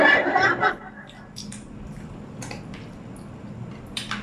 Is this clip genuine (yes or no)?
no